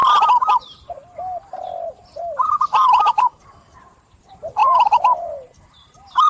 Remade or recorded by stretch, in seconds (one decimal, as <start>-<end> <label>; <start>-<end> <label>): 0.0-1.9 recorded; 1.9-4.6 remade; 4.6-5.7 recorded; 5.7-6.3 remade